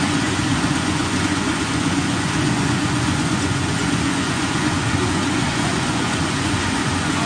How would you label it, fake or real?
fake